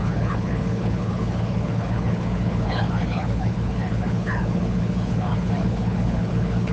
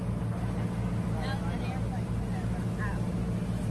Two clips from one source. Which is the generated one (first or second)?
first